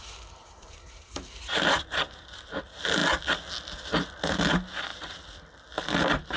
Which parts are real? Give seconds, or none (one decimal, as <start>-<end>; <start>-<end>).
0.0-0.4; 2.6-6.4